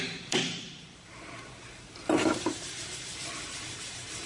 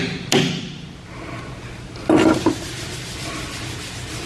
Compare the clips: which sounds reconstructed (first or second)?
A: first